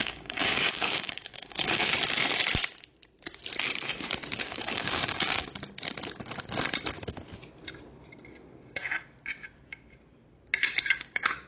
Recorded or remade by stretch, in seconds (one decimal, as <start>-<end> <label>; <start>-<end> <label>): 0.0-1.9 remade; 1.9-4.4 recorded; 4.4-5.5 remade; 5.5-10.6 recorded; 10.6-11.5 remade